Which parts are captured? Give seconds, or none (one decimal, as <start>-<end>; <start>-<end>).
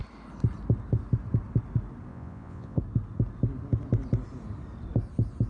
0.0-2.1; 2.8-5.5